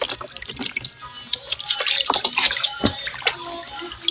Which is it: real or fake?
real